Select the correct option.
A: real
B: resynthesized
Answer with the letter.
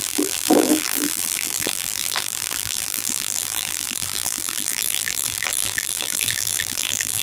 B